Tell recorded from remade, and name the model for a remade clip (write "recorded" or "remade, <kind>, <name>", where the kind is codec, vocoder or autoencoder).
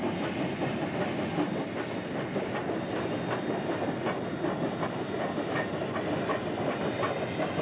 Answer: recorded